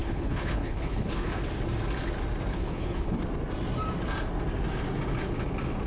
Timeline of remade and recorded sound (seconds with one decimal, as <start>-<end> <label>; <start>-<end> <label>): 0.0-1.4 remade; 1.4-2.5 recorded; 2.5-3.2 remade; 3.2-5.9 recorded